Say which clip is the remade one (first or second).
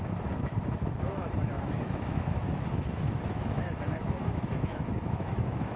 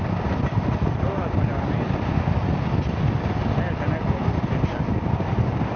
first